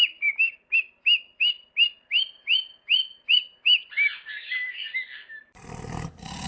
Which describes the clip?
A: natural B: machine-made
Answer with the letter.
A